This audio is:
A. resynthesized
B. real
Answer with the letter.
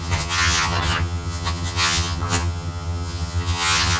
A